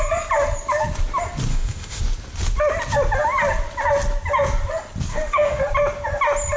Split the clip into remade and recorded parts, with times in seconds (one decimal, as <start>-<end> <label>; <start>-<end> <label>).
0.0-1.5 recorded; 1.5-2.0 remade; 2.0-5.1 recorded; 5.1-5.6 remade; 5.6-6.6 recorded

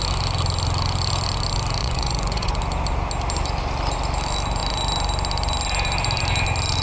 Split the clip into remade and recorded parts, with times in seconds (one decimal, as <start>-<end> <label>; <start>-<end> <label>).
0.0-1.8 recorded; 1.8-2.6 remade; 2.6-6.8 recorded

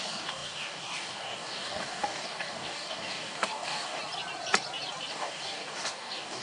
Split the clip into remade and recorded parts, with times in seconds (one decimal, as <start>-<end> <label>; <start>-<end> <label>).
0.0-4.0 remade; 4.0-5.1 recorded; 5.1-6.4 remade

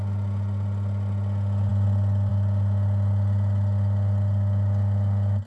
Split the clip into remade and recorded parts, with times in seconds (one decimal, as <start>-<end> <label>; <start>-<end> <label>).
0.0-5.5 recorded

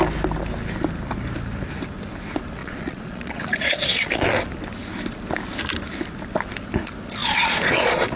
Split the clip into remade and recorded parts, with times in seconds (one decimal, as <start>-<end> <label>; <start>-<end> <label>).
0.0-2.6 recorded; 2.6-4.4 remade; 4.4-7.2 recorded; 7.2-8.2 remade